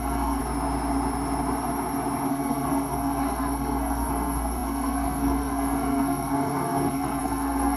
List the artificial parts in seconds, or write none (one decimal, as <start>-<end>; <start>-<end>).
0.0-0.4; 2.3-7.8